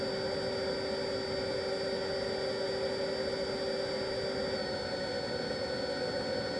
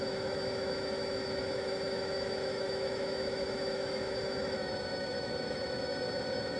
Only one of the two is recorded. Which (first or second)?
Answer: first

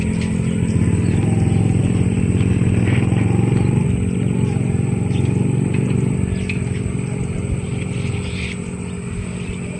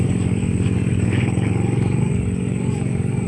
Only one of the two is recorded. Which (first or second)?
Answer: first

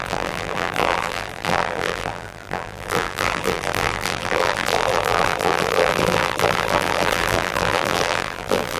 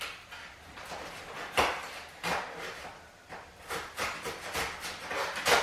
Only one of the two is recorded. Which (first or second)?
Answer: second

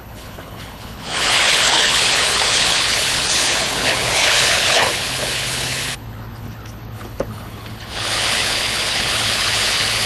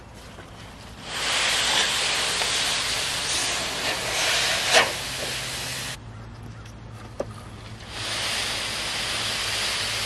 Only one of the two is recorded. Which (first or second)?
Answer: second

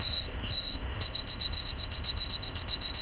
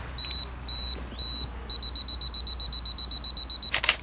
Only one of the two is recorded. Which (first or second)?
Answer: second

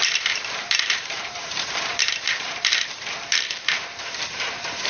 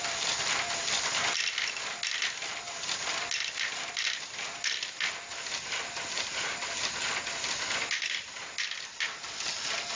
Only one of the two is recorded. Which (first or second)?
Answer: second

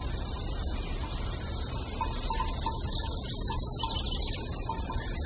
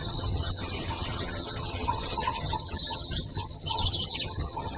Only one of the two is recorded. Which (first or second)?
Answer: first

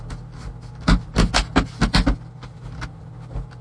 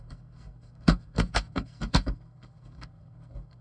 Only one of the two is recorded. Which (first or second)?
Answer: first